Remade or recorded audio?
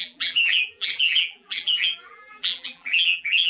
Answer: remade